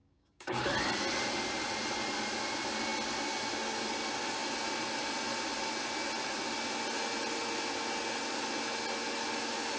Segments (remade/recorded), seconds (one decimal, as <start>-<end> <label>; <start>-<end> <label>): 0.0-0.7 remade; 0.7-9.8 recorded